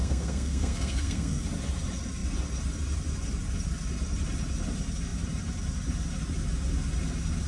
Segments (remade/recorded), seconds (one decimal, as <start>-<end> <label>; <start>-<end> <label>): 0.0-1.4 remade; 1.4-7.5 recorded